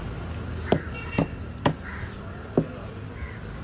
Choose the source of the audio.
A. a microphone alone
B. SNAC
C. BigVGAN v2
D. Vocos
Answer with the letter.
A